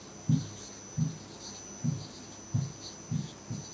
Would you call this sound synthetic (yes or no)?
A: no